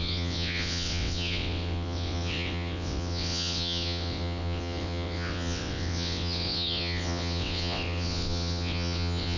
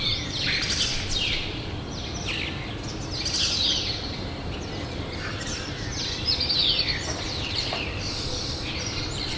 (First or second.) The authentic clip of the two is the second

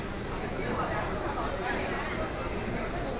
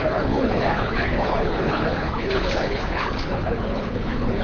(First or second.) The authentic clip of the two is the first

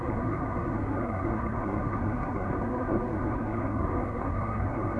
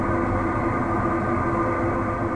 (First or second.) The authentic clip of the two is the second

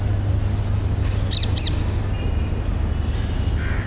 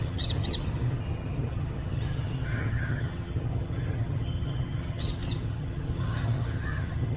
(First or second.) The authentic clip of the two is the first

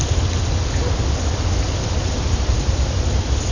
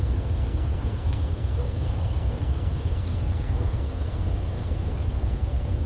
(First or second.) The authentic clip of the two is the first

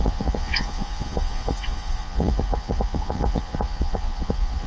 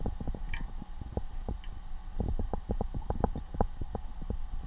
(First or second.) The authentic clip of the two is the second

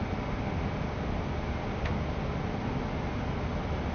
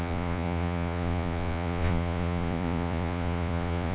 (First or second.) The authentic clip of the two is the first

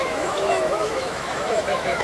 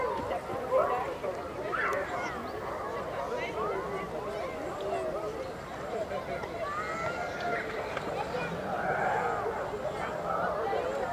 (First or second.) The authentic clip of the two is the second